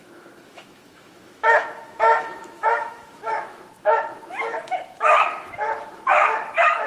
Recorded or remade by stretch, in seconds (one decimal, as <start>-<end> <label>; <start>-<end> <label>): 0.0-6.9 remade